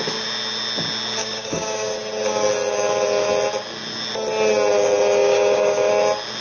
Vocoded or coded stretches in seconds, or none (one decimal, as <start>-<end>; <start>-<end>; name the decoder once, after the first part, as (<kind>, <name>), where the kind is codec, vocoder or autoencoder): 1.2-1.9 (codec, DAC); 5.2-5.9